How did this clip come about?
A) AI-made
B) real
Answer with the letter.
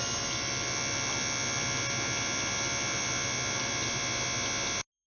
B